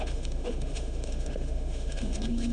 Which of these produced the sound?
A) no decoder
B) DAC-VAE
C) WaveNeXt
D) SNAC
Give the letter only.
B